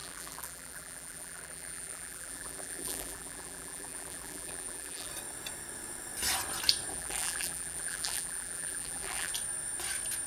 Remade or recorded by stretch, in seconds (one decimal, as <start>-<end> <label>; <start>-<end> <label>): 0.0-5.1 remade; 5.1-6.9 recorded; 6.9-9.3 remade; 9.3-10.3 recorded